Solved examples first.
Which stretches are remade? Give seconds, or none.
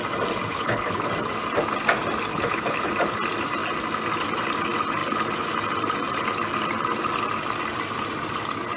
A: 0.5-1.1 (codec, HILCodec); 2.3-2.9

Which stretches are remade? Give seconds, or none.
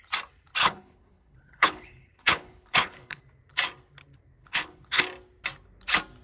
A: 0.6-3.2 (codec, HILCodec); 4.4-5.0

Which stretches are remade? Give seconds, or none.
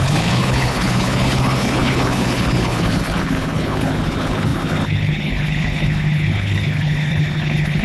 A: 0.0-7.8 (codec, HILCodec)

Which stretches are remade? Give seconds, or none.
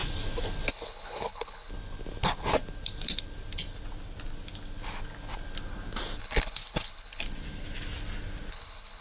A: 0.7-1.7 (codec, HILCodec); 6.2-7.2; 8.5-9.0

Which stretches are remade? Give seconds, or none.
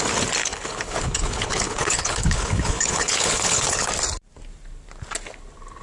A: 0.4-3.9 (codec, HILCodec)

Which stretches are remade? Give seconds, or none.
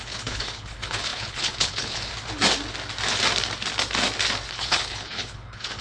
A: 0.0-2.1 (codec, HILCodec); 4.5-5.8